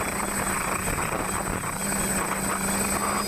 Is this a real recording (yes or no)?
yes